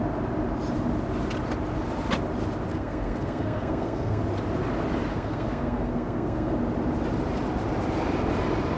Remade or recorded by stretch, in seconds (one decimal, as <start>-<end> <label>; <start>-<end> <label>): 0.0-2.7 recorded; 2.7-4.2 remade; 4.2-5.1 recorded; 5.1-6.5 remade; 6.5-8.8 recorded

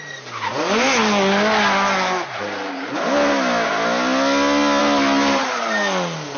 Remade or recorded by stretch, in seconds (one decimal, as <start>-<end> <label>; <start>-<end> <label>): 0.0-6.4 recorded

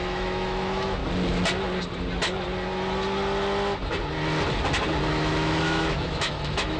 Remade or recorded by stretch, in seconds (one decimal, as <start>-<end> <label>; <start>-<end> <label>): 0.0-1.0 remade; 1.0-5.1 recorded; 5.1-6.8 remade

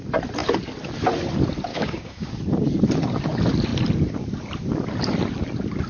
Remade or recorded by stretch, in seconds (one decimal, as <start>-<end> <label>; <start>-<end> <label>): 0.0-1.7 recorded; 1.7-2.3 remade; 2.3-5.9 recorded

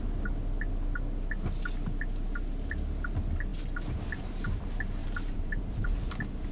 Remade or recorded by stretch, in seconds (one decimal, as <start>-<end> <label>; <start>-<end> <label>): 0.0-5.0 recorded; 5.0-5.8 remade; 5.8-6.5 recorded

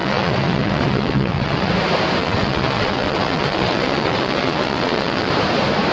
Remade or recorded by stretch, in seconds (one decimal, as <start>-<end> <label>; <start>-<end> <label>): 0.0-1.7 remade; 1.7-2.2 recorded; 2.2-5.3 remade; 5.3-5.9 recorded